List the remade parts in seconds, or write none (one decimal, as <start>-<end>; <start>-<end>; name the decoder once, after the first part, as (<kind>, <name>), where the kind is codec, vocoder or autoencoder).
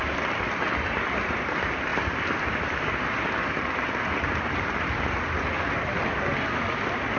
none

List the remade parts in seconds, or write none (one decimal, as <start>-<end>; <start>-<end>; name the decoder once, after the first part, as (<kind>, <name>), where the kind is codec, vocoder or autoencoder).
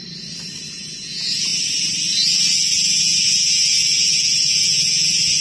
0.7-1.5 (vocoder, Vocos); 3.0-5.4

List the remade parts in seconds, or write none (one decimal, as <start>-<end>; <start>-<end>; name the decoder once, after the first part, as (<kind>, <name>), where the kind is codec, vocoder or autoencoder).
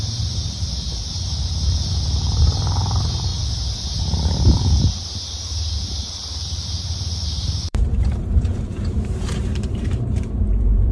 0.0-3.3 (vocoder, BigVGAN v2); 4.6-10.9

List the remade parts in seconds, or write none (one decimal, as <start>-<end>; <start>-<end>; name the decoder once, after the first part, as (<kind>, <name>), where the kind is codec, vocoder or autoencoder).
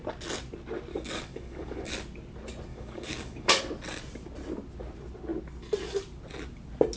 0.9-1.9 (codec, DAC); 2.7-3.6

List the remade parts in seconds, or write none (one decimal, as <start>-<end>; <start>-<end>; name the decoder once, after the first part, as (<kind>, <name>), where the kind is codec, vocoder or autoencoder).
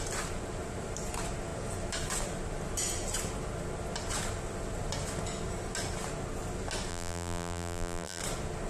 6.9-8.2 (vocoder, BigVGAN v2)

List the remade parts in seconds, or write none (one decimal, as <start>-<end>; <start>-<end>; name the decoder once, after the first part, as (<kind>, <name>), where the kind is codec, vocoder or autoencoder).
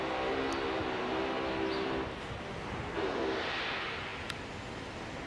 none